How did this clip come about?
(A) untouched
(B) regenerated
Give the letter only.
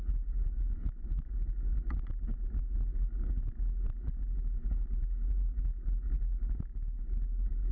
A